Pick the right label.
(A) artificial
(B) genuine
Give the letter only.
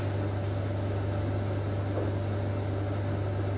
B